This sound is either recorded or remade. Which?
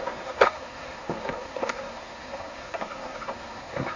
remade